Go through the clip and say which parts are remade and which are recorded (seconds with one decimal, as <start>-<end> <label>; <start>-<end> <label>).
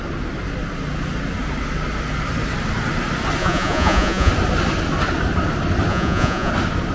0.0-3.4 recorded; 3.4-4.3 remade; 4.3-5.9 recorded; 5.9-6.5 remade; 6.5-6.9 recorded